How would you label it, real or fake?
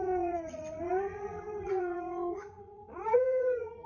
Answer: fake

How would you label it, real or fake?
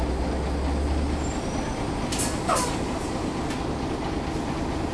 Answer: real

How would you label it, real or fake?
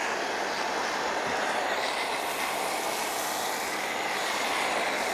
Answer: real